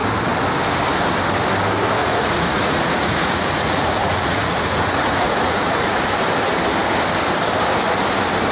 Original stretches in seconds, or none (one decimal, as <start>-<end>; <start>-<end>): 0.0-2.0; 6.2-8.5